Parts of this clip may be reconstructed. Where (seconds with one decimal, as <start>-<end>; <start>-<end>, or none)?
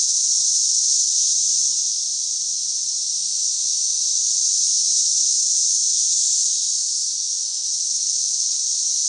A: 3.0-4.2; 6.6-7.7